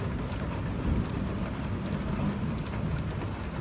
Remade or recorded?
recorded